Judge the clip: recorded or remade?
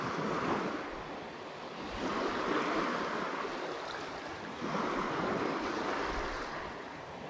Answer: recorded